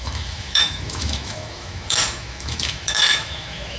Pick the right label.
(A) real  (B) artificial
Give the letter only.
B